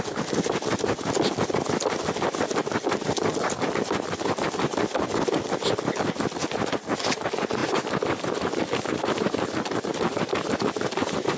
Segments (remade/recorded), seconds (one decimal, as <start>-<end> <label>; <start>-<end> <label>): 0.0-11.4 recorded